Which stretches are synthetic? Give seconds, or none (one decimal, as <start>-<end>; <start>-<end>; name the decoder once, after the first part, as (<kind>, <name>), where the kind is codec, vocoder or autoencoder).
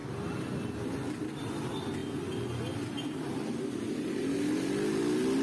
none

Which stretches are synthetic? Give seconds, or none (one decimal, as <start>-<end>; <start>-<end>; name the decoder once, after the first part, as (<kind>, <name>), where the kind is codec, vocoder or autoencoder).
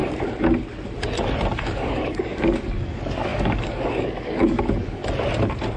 1.5-5.0 (codec, DAC)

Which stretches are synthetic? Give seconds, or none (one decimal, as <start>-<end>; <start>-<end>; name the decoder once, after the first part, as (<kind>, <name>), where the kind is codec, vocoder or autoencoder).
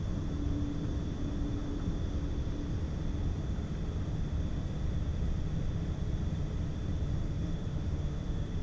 7.2-8.6 (autoencoder, DAC-VAE)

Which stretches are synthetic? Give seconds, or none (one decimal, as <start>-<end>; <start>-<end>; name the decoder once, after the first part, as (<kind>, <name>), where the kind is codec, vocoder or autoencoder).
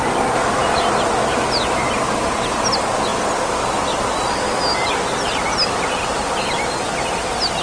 none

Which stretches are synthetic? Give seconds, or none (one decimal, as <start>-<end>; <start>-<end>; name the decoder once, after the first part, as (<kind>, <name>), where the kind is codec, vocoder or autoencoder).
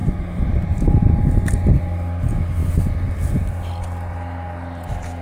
0.0-1.6 (vocoder, BigVGAN v2)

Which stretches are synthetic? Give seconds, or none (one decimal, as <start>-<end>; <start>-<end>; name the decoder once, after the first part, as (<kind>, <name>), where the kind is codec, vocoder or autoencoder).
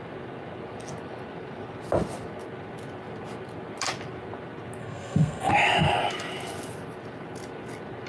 4.8-5.5 (codec, SNAC)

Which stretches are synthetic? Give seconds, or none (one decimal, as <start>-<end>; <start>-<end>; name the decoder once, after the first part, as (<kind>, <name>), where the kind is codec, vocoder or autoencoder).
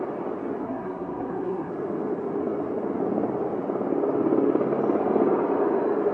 0.6-1.7 (codec, SNAC)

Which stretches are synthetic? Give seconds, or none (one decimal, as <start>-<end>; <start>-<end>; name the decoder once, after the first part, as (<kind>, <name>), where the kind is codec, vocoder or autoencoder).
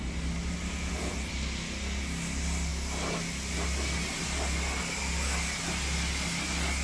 none